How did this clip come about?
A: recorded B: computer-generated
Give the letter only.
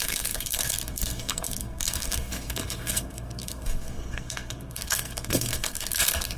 B